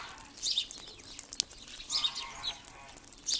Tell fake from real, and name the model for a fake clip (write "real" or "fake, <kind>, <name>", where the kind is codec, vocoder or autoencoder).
real